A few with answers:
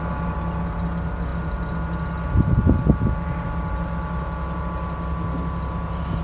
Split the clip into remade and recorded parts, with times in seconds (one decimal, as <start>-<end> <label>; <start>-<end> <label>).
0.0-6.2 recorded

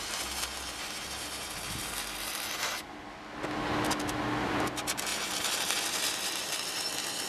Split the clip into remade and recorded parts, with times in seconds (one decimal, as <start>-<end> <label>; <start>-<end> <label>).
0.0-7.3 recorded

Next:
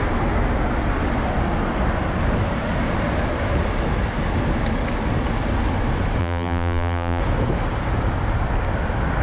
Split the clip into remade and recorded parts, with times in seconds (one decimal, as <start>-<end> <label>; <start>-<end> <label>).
0.0-6.2 recorded; 6.2-7.2 remade; 7.2-9.2 recorded